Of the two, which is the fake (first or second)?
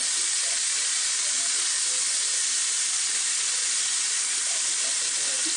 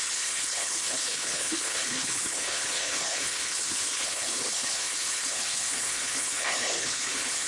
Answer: second